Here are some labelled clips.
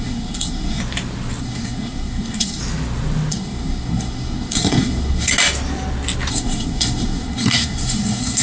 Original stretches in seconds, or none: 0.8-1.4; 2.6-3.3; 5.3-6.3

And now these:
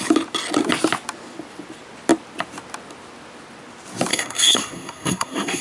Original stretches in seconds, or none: 0.0-4.1

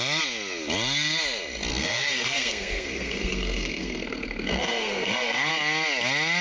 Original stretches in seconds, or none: 0.0-1.7; 5.5-6.4

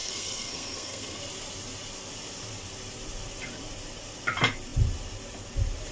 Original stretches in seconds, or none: 1.2-5.9